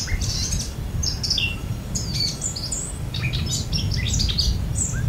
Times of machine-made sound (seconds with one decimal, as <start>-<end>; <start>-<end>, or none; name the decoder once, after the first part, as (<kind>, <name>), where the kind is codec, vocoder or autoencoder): none